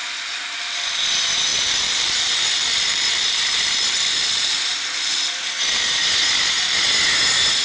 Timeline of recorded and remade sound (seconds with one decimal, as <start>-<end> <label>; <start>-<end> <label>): 0.0-0.6 remade; 0.6-1.5 recorded; 1.5-6.1 remade; 6.1-7.6 recorded